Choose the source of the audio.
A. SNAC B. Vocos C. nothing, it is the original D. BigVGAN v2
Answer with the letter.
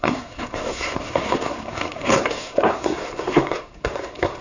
A